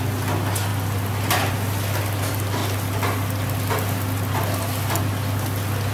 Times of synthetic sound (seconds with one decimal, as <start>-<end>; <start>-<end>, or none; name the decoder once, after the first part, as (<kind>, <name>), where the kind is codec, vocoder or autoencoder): none